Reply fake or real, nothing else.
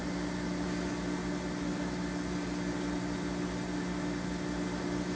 real